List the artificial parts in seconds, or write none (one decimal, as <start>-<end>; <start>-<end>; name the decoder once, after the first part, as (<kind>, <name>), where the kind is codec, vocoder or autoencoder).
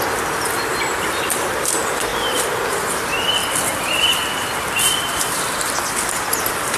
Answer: 3.4-5.7 (vocoder, BigVGAN v2)